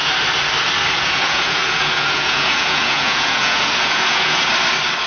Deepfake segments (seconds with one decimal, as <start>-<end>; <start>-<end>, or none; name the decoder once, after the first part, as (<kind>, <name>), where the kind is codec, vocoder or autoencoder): 1.0-4.5 (vocoder, Vocos)